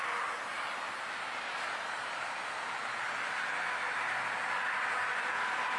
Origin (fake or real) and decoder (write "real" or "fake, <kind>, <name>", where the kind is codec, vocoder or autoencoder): real